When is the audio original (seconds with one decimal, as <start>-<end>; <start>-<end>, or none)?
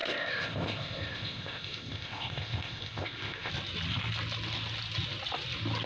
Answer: 3.5-5.9